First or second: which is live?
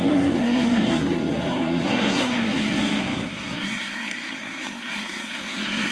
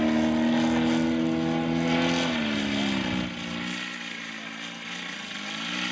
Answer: second